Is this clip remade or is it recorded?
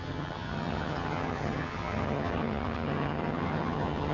remade